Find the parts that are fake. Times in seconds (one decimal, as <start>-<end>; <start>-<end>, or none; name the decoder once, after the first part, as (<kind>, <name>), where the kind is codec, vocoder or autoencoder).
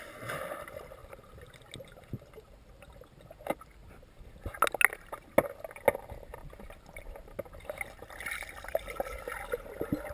none